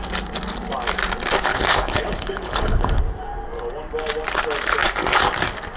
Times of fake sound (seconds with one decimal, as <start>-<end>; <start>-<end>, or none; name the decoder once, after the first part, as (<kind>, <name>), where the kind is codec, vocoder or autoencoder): 1.5-3.0 (codec, HILCodec)